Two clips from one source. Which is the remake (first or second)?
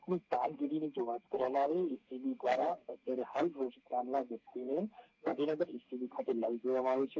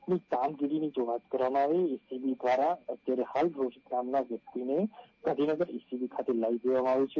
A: first